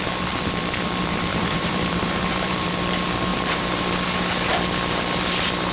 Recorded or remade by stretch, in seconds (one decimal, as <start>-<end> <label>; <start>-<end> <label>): 0.0-1.3 recorded; 1.3-2.7 remade; 2.7-3.3 recorded; 3.3-3.8 remade; 3.8-5.7 recorded